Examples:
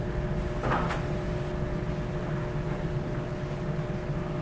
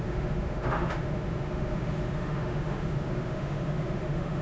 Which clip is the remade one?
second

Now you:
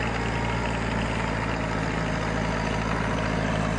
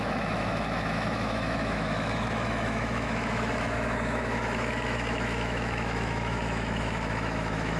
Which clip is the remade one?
second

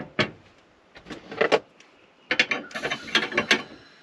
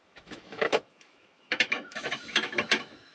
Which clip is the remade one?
second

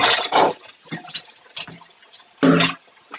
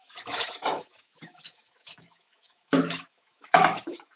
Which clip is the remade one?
second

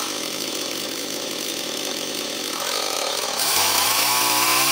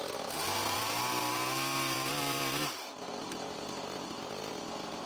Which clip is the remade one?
first